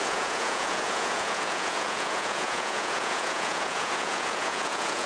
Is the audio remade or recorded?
remade